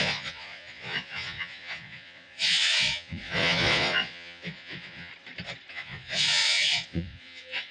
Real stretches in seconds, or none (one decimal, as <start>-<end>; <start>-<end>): 5.1-5.7